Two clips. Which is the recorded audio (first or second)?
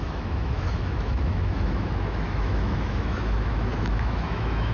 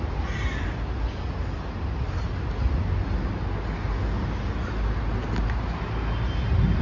second